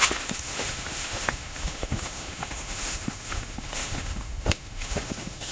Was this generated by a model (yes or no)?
yes